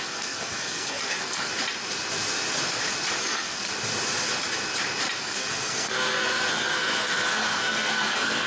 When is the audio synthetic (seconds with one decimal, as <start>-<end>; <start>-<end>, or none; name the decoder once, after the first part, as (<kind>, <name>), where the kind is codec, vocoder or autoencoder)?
0.0-1.5 (codec, SNAC); 3.2-3.6; 5.2-8.5